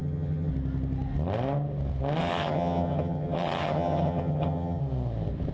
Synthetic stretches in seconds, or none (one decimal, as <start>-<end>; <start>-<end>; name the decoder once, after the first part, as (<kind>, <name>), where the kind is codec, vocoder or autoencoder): 0.0-0.5 (vocoder, HiFi-GAN); 2.2-4.8